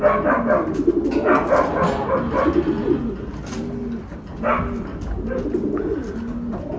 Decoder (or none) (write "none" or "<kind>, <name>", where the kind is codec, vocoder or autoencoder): none